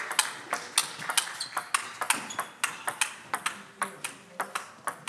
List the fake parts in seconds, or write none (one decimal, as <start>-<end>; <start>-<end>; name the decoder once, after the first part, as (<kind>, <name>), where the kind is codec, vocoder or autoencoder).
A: none